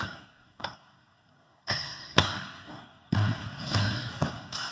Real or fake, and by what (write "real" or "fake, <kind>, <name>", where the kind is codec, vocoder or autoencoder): fake, codec, SNAC